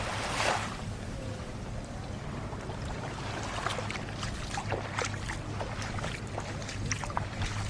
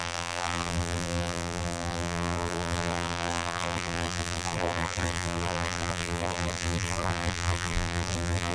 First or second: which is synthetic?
second